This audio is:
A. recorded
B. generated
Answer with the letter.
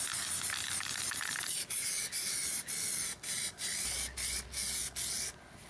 A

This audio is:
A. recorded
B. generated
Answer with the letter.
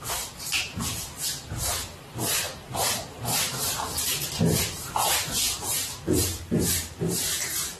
B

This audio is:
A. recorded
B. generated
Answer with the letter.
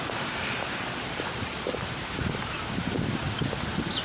B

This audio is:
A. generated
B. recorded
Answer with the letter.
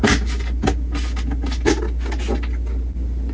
B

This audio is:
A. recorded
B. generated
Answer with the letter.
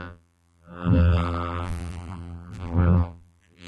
B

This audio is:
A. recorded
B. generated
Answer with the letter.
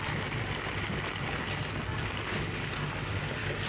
A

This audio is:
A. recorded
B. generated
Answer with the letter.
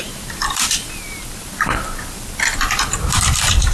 B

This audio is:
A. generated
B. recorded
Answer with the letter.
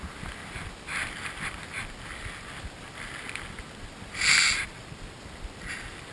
B